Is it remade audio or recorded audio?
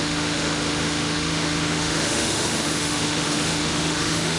remade